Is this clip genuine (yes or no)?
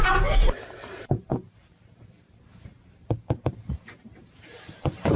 no